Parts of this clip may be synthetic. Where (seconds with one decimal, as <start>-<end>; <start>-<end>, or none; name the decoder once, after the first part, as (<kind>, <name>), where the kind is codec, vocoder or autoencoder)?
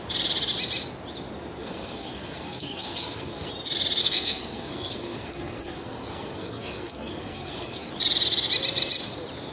1.6-3.5 (codec, SNAC); 4.0-7.9